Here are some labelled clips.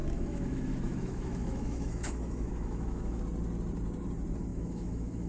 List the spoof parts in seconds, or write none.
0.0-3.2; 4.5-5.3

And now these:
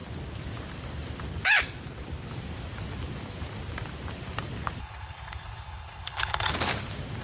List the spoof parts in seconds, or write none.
4.8-6.5

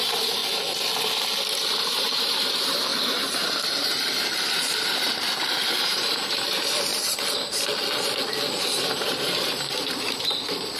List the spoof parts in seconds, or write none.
0.0-0.4; 1.7-6.9; 8.5-10.8